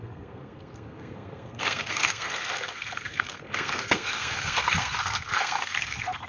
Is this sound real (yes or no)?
no